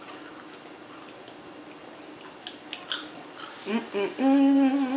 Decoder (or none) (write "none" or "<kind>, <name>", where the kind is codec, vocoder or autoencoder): none